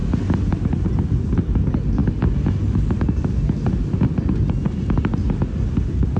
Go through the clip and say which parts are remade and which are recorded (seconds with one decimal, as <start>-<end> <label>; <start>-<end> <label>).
0.0-6.2 recorded